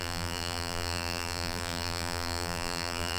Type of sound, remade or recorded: remade